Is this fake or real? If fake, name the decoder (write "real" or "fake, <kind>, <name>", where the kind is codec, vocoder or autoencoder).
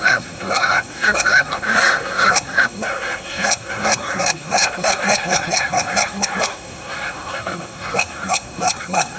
fake, codec, SNAC